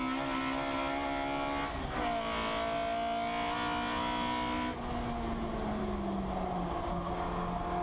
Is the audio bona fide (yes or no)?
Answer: yes